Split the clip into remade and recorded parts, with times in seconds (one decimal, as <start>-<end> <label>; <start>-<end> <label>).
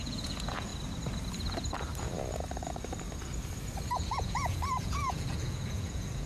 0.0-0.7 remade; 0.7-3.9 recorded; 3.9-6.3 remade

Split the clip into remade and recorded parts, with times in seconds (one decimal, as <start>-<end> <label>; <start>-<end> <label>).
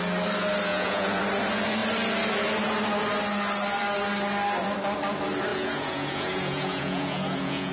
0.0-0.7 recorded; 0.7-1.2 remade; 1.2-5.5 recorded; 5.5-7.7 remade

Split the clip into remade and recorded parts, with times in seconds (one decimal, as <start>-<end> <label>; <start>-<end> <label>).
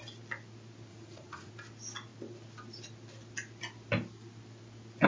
0.0-0.9 recorded; 0.9-1.5 remade; 1.5-5.1 recorded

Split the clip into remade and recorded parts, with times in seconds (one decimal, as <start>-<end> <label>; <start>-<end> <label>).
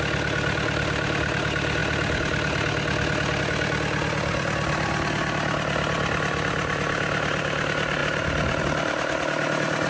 0.0-9.9 recorded